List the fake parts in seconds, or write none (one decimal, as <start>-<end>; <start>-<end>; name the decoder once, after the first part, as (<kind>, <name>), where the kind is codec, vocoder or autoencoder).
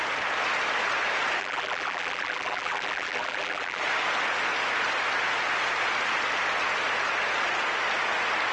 1.4-3.8 (vocoder, BigVGAN v2)